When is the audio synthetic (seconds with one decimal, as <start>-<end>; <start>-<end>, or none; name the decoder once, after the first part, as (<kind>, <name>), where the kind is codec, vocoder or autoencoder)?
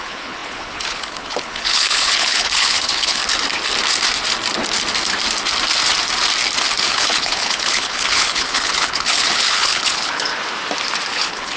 0.0-3.2 (codec, HILCodec); 6.8-10.3; 11.1-11.6